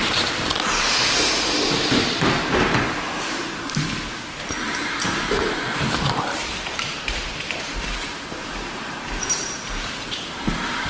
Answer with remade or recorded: remade